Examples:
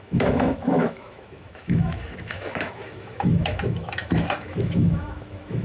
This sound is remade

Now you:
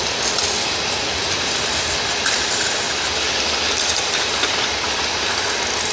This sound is recorded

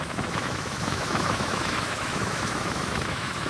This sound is remade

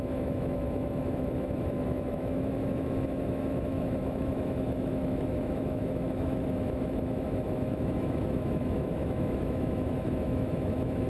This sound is remade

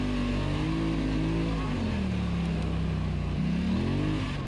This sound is recorded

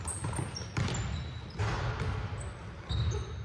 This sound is recorded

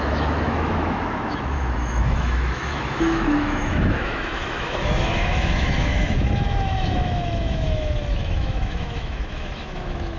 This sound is remade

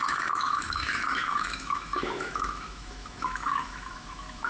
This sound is remade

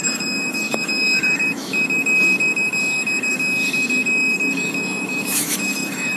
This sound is remade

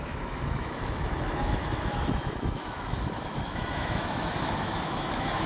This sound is remade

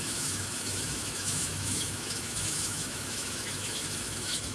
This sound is remade